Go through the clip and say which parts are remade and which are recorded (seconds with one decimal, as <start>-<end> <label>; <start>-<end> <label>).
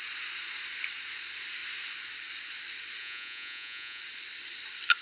0.0-3.0 recorded; 3.0-4.0 remade; 4.0-5.0 recorded